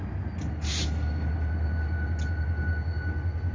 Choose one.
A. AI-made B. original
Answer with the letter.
B